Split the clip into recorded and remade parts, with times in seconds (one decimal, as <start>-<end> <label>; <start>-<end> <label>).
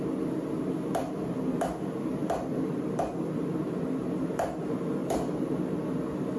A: 0.0-2.2 recorded; 2.2-3.6 remade; 3.6-5.0 recorded; 5.0-5.8 remade; 5.8-6.4 recorded